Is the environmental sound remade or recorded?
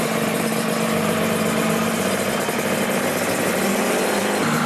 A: recorded